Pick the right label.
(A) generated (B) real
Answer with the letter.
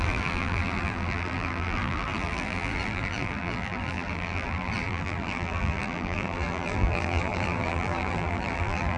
A